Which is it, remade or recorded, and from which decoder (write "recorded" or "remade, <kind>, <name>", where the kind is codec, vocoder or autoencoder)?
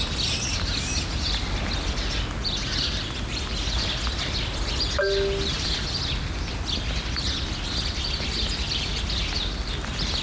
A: recorded